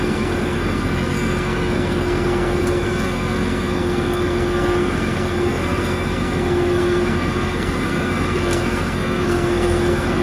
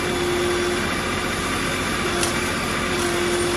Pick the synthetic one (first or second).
first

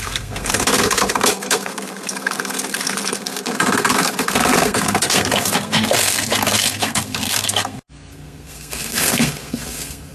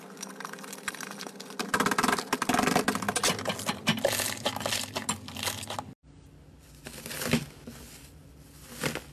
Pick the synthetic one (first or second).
first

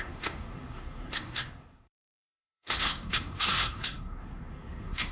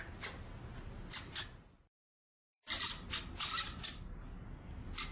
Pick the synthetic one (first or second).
first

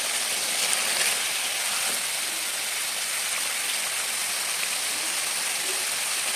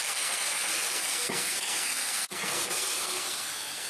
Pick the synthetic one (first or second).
second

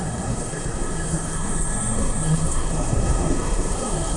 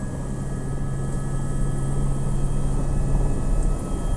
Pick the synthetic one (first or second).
first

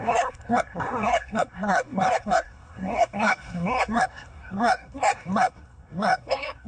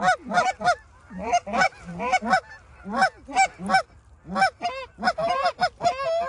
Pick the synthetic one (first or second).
first